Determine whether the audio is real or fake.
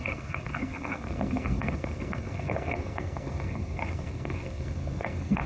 fake